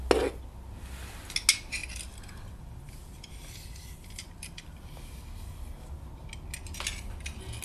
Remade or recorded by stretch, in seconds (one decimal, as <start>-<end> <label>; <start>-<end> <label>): 0.0-1.8 recorded; 1.8-4.8 remade; 4.8-7.6 recorded